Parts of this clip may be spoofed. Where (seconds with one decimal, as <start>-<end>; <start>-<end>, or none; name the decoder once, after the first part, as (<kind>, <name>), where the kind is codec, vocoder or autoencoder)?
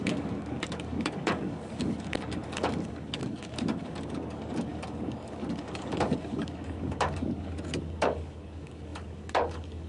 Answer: 0.0-9.9 (codec, DAC)